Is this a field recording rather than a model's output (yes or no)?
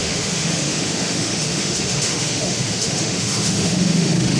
no